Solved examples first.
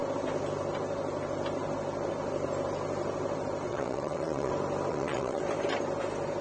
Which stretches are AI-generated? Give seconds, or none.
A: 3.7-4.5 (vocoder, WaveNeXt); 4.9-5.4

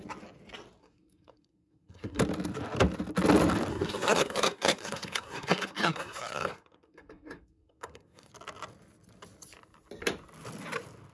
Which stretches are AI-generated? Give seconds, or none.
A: 0.8-2.2 (codec, SNAC); 3.7-8.3

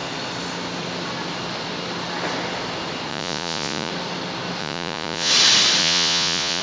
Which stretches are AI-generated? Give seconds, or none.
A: 3.1-3.9 (vocoder, Vocos); 4.6-5.3; 5.8-6.6

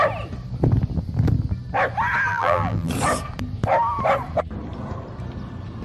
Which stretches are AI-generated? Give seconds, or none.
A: 2.3-2.9 (vocoder, BigVGAN v2)